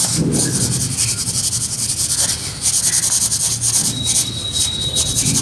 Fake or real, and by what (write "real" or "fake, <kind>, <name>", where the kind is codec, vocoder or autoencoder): real